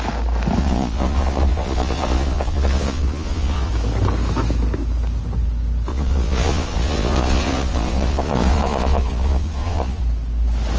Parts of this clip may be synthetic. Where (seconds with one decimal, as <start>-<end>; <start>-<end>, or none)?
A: 0.6-3.7; 5.9-10.0